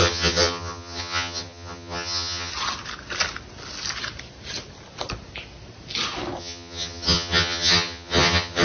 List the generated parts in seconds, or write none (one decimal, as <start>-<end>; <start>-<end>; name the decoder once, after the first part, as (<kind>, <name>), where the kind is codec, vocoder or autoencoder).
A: 0.0-2.5 (vocoder, HiFi-GAN); 6.4-8.6